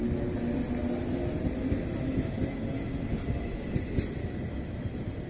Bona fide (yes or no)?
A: yes